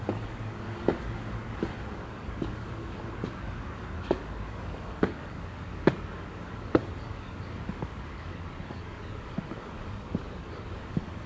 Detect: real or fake fake